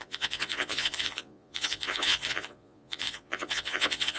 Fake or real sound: fake